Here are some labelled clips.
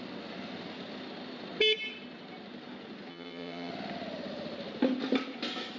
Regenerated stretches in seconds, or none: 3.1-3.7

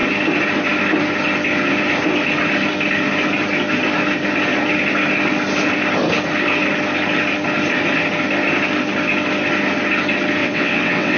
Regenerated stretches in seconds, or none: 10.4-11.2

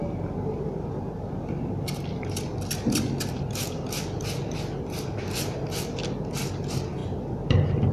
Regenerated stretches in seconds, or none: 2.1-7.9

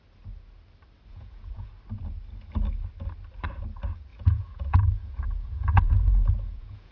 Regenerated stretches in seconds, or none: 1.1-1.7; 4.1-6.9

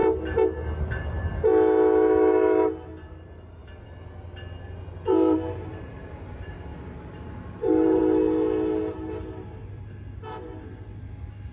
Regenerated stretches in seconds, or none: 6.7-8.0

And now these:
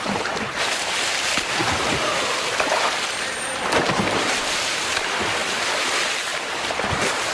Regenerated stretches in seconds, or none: 0.0-2.1; 3.2-5.4; 6.4-7.3

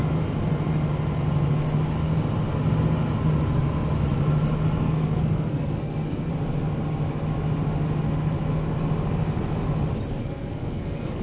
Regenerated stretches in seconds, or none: 4.8-6.3; 10.2-11.2